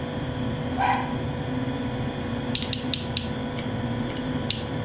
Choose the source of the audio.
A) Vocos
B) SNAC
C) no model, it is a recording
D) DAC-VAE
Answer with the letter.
C